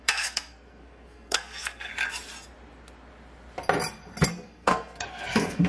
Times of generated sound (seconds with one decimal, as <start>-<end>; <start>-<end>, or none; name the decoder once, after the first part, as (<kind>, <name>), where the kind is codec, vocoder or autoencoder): 0.0-1.9 (codec, SNAC); 4.3-5.7